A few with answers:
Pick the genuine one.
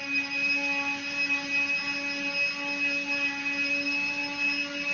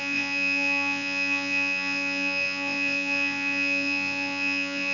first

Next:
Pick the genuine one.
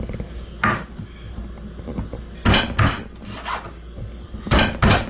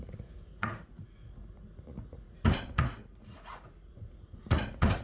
first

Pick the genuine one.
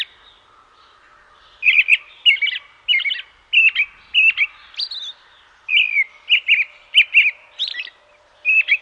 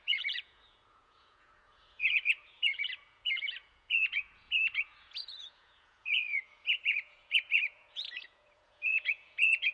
first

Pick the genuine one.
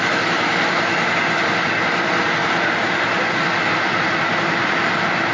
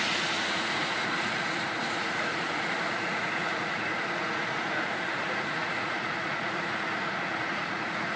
first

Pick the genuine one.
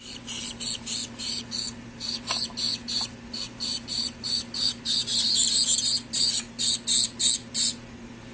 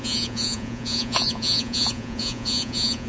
first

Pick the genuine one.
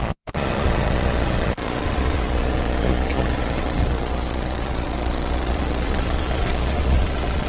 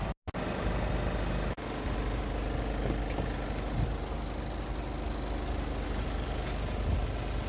second